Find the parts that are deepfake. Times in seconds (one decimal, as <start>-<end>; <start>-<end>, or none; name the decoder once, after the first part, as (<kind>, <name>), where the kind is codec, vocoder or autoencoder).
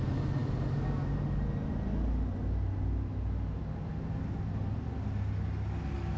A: none